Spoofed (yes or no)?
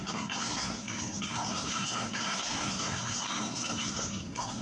yes